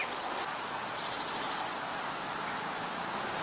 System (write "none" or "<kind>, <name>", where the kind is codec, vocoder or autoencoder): none